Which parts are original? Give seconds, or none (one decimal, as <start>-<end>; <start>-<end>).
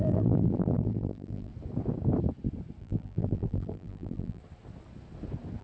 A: 1.5-2.8; 4.4-5.6